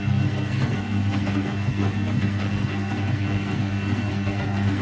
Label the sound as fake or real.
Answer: fake